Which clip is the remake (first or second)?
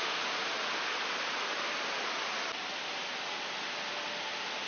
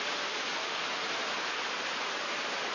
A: second